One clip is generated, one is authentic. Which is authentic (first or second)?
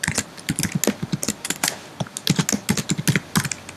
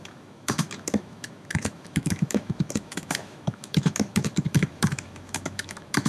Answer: first